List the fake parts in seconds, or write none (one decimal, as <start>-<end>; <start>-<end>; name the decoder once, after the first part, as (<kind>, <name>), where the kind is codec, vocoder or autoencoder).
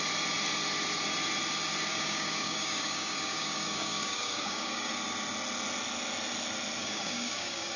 1.9-4.9 (codec, DAC); 6.8-7.8